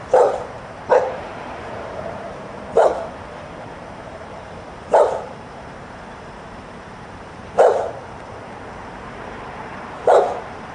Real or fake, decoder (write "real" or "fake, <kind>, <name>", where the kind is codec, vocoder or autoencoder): fake, vocoder, BigVGAN v2